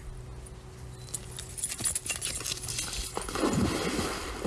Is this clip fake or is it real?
real